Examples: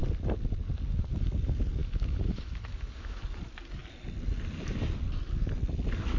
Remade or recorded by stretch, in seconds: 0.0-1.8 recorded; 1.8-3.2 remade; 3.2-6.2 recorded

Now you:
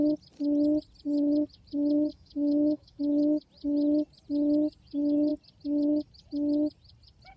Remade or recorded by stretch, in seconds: 0.0-2.1 recorded; 2.1-3.0 remade; 3.0-7.4 recorded

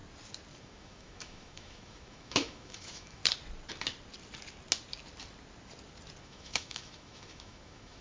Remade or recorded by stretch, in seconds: 0.0-0.6 recorded; 0.6-3.2 remade; 3.2-6.2 recorded; 6.2-8.0 remade

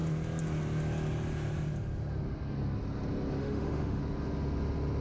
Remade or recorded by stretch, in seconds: 0.0-3.4 recorded; 3.4-4.0 remade; 4.0-5.0 recorded

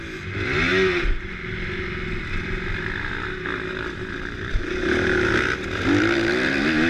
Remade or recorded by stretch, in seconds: 0.0-6.9 recorded